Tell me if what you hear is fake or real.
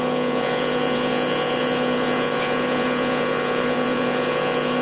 fake